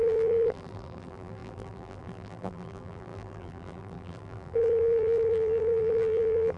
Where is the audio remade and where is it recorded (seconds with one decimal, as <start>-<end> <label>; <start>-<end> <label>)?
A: 0.0-6.6 remade